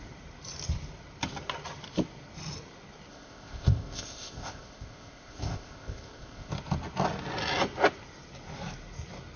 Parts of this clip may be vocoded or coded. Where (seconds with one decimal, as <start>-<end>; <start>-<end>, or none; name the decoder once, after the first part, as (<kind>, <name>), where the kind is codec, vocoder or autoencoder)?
3.1-6.5 (codec, ZipCodec)